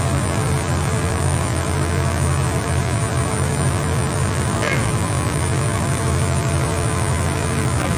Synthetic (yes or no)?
yes